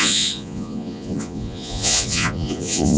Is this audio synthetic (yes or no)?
yes